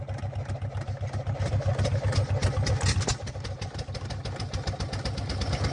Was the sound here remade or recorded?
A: recorded